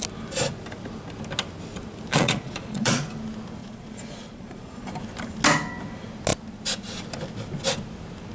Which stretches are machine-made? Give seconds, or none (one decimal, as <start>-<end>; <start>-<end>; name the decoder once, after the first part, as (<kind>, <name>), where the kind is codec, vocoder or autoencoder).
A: 2.1-3.0 (vocoder, Vocos); 3.6-4.9

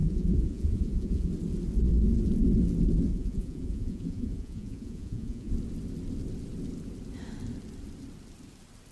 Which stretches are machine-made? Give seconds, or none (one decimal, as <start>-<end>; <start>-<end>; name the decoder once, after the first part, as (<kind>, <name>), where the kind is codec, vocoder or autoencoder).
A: 0.0-1.3 (vocoder, Vocos); 3.1-5.5

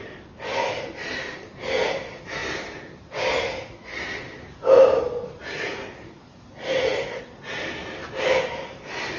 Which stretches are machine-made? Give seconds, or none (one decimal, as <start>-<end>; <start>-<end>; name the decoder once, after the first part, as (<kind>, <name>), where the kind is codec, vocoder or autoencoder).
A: none

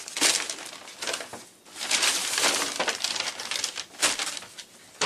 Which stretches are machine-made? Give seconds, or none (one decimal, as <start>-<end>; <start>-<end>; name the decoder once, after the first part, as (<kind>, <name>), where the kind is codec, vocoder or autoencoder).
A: none

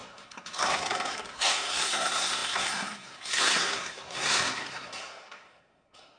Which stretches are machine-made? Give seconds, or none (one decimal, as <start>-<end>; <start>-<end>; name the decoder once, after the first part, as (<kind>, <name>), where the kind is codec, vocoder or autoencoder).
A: 0.0-6.2 (codec, SNAC)

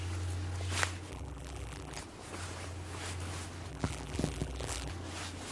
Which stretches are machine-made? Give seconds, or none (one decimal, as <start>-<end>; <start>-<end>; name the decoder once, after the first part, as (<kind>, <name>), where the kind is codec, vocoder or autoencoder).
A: 1.1-2.0 (vocoder, BigVGAN v2); 3.7-4.9